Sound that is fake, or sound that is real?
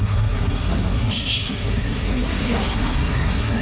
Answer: fake